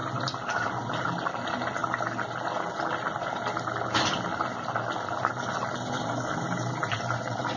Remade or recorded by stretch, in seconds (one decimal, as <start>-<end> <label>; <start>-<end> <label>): 0.0-7.6 recorded